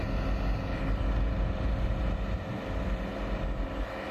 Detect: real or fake real